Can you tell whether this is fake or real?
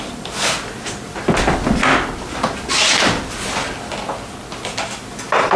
real